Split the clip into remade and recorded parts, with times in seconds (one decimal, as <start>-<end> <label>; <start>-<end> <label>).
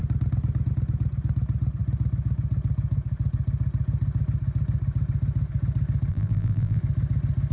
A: 0.0-6.1 recorded; 6.1-6.8 remade; 6.8-7.5 recorded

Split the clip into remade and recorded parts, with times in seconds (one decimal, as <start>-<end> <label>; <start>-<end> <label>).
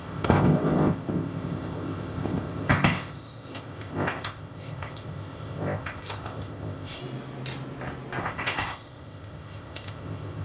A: 0.0-7.0 remade; 7.0-8.2 recorded; 8.2-10.4 remade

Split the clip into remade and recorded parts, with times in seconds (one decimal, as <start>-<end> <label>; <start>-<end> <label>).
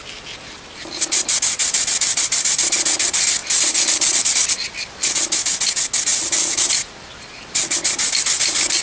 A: 0.0-1.6 recorded; 1.6-2.4 remade; 2.4-3.4 recorded; 3.4-4.5 remade; 4.5-6.1 recorded; 6.1-6.7 remade; 6.7-8.8 recorded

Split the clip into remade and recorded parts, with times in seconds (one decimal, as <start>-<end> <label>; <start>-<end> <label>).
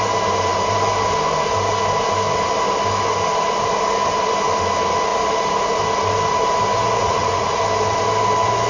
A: 0.0-7.0 recorded; 7.0-7.6 remade; 7.6-8.7 recorded